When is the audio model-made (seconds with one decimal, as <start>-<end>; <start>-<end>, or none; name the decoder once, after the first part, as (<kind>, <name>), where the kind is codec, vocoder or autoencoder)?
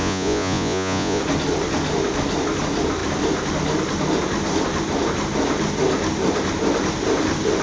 0.0-1.2 (vocoder, Vocos)